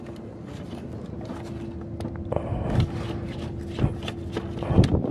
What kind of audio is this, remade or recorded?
recorded